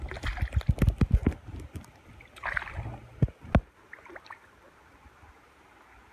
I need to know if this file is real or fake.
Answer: real